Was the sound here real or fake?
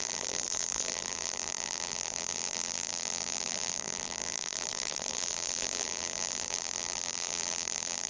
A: fake